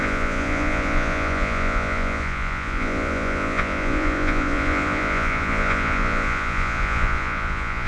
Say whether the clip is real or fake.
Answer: fake